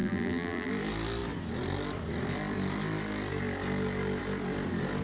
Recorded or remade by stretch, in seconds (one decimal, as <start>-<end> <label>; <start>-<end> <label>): 0.0-0.7 remade; 0.7-5.0 recorded